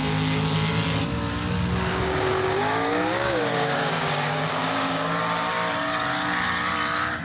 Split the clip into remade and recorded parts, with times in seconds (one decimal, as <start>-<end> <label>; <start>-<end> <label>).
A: 0.0-1.9 recorded; 1.9-5.2 remade; 5.2-7.2 recorded